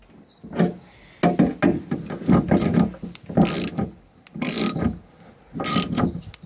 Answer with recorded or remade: recorded